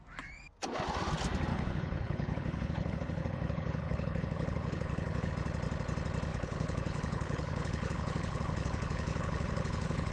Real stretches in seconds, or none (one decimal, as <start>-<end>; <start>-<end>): 0.0-1.5; 5.3-6.3